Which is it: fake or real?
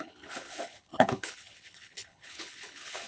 fake